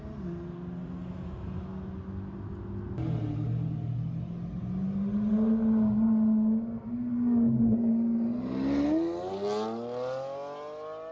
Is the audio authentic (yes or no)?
yes